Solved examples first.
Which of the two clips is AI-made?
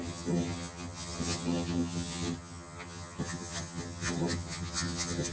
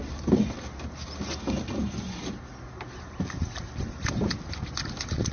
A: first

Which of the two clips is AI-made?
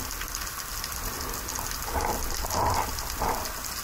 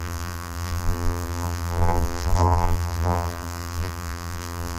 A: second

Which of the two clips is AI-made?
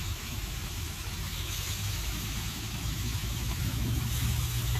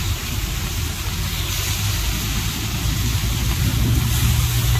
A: first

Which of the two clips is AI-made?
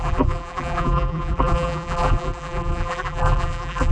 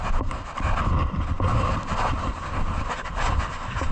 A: first